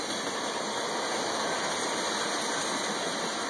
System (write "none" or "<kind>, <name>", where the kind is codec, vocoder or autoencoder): none